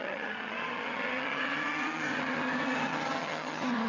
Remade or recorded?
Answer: remade